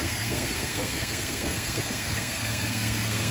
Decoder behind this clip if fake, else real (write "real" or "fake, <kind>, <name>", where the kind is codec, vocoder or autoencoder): fake, codec, SNAC